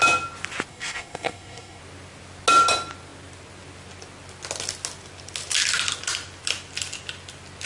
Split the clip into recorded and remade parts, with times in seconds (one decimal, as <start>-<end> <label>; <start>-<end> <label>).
0.0-0.7 recorded; 0.7-1.8 remade; 1.8-7.7 recorded